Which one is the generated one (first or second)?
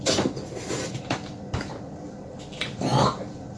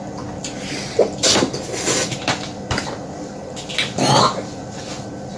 first